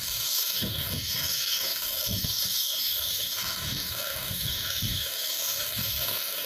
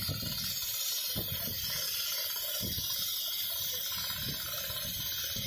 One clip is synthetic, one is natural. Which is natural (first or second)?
second